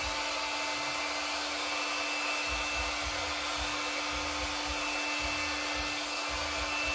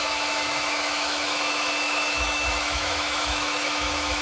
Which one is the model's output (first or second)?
second